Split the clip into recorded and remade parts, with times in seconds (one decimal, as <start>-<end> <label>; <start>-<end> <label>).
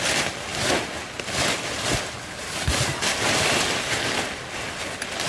0.0-5.3 recorded